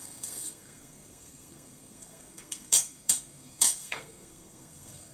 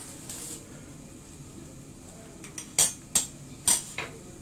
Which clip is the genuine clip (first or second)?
second